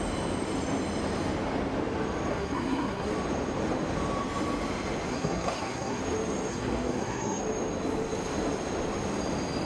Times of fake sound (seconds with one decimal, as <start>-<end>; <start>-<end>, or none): 2.3-3.1; 5.1-6.0; 6.5-7.4